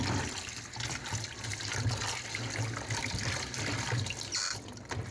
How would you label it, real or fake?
real